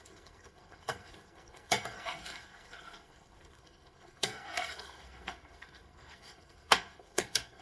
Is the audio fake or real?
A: fake